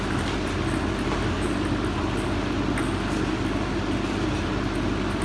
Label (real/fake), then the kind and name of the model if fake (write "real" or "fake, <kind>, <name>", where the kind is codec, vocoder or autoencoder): real